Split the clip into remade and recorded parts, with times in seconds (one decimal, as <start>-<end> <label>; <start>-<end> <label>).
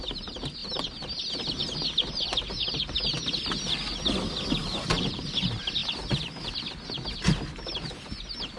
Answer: 0.0-0.6 recorded; 0.6-1.2 remade; 1.2-4.6 recorded; 4.6-5.2 remade; 5.2-8.6 recorded